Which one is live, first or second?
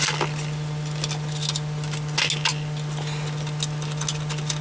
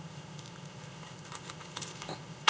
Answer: first